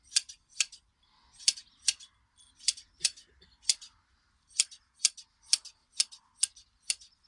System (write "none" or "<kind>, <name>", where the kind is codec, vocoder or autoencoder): none